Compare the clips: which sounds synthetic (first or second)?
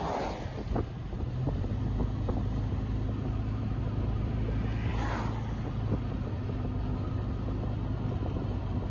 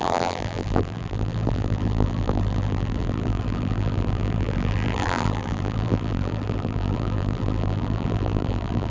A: second